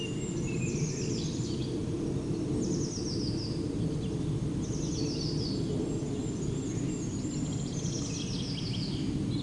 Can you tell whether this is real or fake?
real